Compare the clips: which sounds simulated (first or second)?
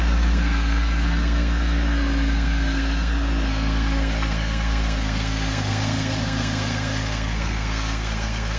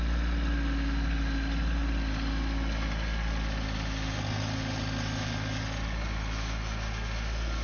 first